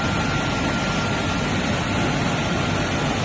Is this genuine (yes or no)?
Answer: yes